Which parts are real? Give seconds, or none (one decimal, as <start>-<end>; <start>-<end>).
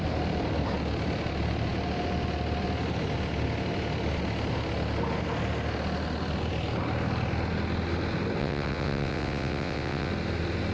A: 0.0-8.4; 10.1-10.7